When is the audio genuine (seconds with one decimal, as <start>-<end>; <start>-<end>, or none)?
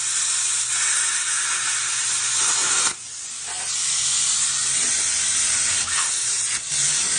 0.0-7.2